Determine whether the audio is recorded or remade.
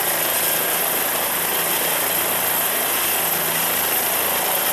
recorded